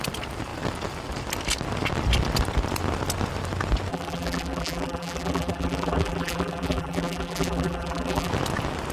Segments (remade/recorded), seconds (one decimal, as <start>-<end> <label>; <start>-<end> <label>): 0.0-3.9 recorded; 3.9-8.3 remade; 8.3-8.9 recorded